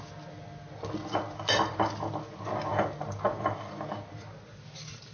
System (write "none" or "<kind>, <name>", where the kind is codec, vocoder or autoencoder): none